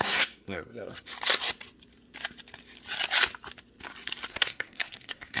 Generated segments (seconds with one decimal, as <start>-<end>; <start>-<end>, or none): 0.0-1.1; 4.3-5.4